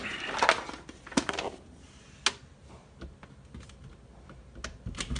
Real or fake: real